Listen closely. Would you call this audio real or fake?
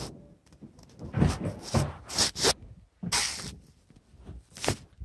real